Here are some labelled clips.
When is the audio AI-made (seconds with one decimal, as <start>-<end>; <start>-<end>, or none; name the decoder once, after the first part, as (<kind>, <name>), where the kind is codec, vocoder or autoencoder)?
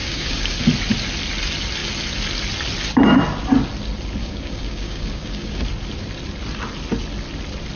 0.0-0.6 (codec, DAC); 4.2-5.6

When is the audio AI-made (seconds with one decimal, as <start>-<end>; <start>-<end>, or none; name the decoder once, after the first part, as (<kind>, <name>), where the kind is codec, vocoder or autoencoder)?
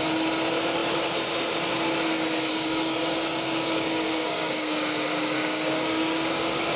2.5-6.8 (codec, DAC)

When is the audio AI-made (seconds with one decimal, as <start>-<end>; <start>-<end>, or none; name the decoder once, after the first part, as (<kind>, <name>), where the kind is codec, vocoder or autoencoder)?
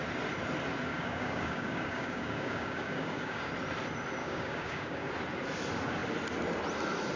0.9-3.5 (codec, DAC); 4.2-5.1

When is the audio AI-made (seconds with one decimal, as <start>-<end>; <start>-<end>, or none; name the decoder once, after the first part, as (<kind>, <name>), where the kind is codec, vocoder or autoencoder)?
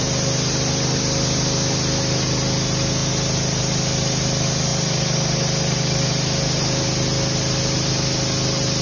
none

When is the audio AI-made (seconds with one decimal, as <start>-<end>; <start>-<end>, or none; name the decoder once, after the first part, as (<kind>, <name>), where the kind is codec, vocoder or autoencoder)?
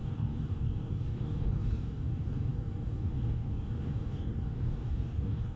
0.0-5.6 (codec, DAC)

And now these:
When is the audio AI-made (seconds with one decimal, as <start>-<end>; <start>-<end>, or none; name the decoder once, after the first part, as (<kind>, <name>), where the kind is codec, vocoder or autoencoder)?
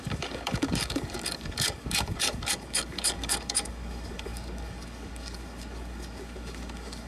0.0-7.1 (codec, DAC)